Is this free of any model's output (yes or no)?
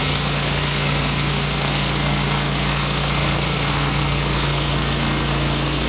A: no